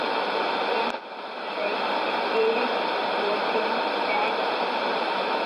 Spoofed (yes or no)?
yes